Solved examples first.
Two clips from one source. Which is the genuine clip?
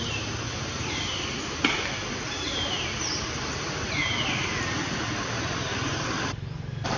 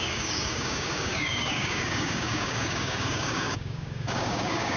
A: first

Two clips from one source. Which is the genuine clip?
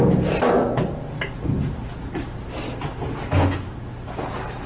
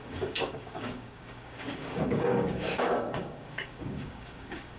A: first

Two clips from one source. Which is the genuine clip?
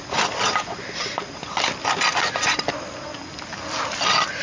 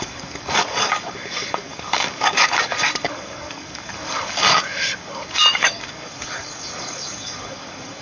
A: first